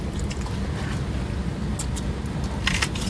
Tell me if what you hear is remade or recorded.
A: recorded